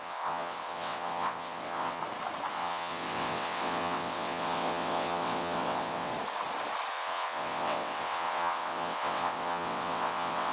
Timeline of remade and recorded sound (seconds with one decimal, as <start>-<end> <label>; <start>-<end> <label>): 0.0-2.0 remade; 2.0-2.5 recorded; 2.5-6.1 remade; 6.1-6.9 recorded; 6.9-10.5 remade